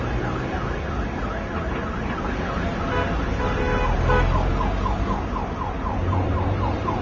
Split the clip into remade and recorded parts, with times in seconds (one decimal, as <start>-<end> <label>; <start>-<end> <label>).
0.0-6.0 recorded; 6.0-7.0 remade